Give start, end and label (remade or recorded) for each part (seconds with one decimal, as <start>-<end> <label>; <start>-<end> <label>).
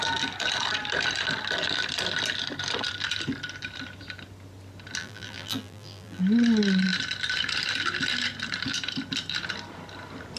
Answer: 0.0-5.0 recorded; 5.0-6.2 remade; 6.2-10.4 recorded